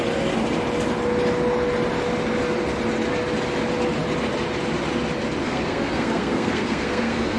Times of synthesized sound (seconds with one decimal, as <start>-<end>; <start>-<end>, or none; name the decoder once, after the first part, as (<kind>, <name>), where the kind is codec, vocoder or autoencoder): 5.4-7.4 (codec, SNAC)